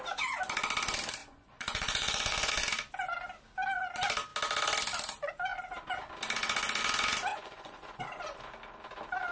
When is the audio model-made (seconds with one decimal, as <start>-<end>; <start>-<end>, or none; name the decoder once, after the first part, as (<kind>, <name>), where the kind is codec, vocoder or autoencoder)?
1.2-2.5 (vocoder, Vocos); 7.3-8.0